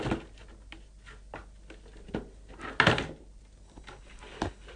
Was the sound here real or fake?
real